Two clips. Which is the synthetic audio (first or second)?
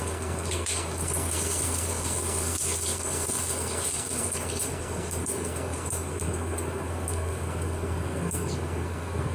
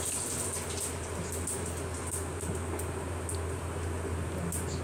first